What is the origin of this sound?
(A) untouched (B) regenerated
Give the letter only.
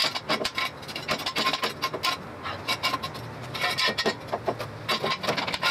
A